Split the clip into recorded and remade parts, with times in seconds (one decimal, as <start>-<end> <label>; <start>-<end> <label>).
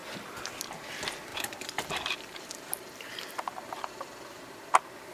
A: 0.0-1.3 recorded; 1.3-4.4 remade; 4.4-5.1 recorded